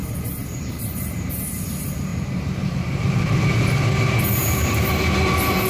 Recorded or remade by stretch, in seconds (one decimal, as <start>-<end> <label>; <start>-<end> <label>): 0.0-1.3 remade; 1.3-2.1 recorded; 2.1-3.4 remade; 3.4-4.4 recorded; 4.4-5.0 remade; 5.0-5.7 recorded